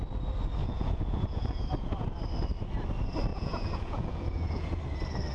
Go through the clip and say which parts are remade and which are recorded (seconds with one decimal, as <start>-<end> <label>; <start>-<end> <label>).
0.0-0.6 recorded; 0.6-1.6 remade; 1.6-3.3 recorded; 3.3-4.8 remade; 4.8-5.3 recorded